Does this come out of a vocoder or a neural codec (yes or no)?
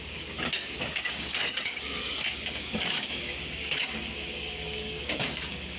yes